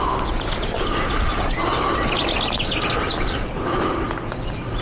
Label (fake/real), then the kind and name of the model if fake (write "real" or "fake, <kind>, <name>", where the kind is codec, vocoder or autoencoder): real